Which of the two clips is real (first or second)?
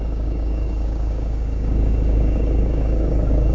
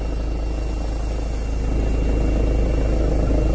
second